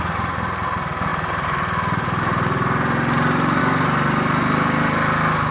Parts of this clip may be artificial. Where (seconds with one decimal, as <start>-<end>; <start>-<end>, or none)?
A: none